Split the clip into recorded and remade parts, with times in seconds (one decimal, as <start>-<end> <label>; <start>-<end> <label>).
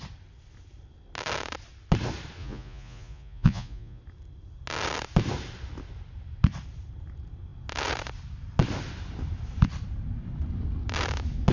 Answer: 0.0-2.4 recorded; 2.4-4.0 remade; 4.0-11.5 recorded